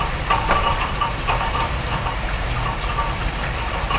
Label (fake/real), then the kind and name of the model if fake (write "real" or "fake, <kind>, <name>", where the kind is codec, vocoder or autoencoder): fake, vocoder, BigVGAN v2